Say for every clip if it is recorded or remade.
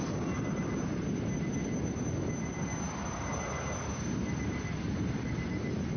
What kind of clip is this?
recorded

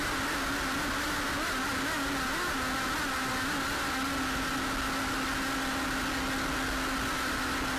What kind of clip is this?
recorded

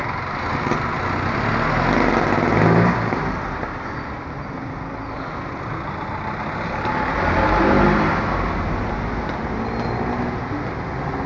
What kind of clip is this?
recorded